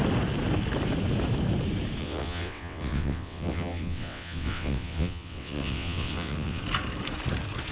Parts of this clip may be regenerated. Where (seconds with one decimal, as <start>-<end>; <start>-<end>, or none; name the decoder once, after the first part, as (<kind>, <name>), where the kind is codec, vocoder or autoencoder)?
2.0-6.6 (vocoder, WaveNeXt)